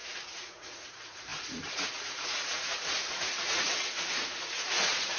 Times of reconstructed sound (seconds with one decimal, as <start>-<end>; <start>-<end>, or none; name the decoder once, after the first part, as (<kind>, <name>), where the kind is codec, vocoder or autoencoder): 0.0-5.2 (vocoder, Vocos)